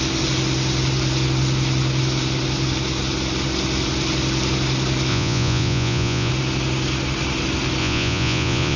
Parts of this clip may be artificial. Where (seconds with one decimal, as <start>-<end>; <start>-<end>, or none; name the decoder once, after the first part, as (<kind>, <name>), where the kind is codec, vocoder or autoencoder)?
5.1-6.3 (vocoder, Vocos); 7.8-8.8